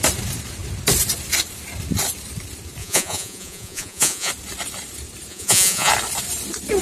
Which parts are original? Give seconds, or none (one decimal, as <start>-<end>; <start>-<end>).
0.0-2.8; 4.3-5.3; 5.9-6.8